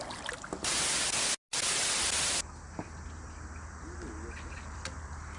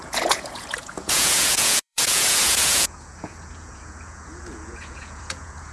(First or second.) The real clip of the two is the first